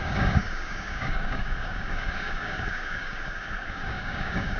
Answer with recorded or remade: remade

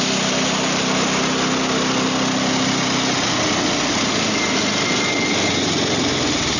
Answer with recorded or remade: recorded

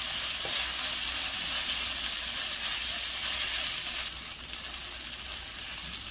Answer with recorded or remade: recorded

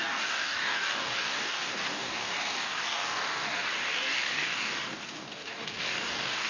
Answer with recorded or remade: remade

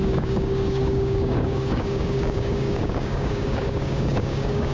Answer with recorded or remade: remade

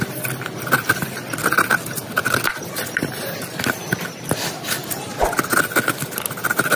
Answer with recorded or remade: recorded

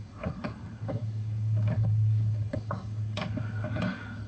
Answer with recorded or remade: remade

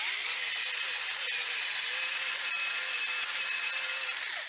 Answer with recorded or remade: recorded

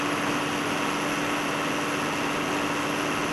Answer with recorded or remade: recorded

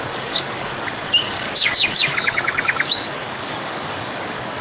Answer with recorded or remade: remade